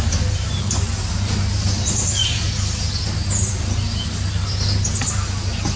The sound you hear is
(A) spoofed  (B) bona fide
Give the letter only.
B